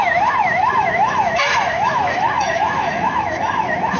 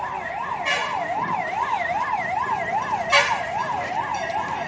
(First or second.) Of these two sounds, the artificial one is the first